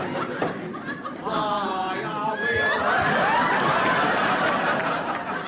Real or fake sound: real